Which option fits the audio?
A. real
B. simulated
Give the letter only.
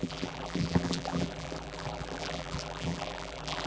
B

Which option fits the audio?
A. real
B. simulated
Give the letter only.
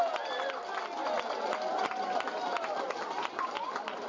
A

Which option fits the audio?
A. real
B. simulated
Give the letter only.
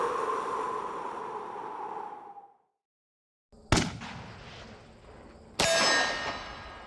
A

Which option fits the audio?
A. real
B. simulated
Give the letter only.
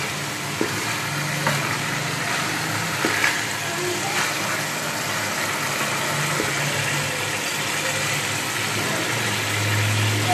A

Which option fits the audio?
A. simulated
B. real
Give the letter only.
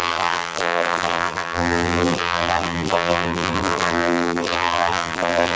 A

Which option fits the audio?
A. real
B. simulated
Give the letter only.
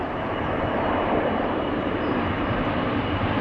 B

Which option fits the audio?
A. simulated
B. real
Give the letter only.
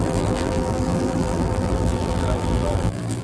A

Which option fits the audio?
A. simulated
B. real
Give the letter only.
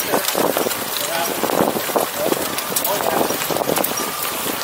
A